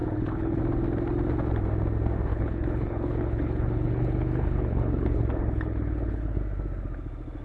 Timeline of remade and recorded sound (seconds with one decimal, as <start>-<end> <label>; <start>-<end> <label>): 0.0-0.6 remade; 0.6-2.3 recorded; 2.3-6.4 remade; 6.4-7.4 recorded